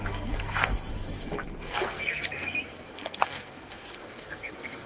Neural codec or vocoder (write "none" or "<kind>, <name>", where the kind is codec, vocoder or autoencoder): codec, SNAC